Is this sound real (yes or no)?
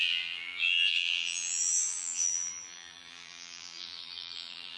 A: no